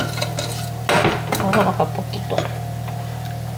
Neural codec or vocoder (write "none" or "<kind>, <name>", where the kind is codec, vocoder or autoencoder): none